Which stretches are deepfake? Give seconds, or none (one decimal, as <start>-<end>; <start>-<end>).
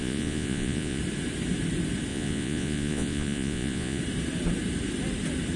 0.0-1.0; 2.1-4.0